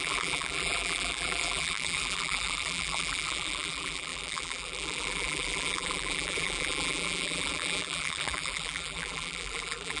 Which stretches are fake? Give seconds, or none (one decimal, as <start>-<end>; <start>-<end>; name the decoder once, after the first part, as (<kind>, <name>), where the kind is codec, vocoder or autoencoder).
0.0-10.0 (vocoder, BigVGAN v2)